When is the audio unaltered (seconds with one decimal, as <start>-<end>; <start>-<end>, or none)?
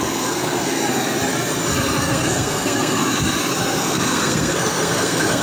0.8-2.0; 3.0-3.8